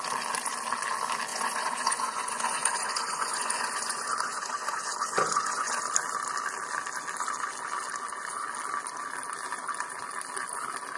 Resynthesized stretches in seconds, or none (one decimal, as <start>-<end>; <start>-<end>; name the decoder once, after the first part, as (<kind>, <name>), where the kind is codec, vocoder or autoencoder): 1.3-5.8 (vocoder, Vocos)